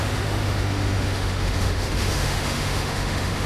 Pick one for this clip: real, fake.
fake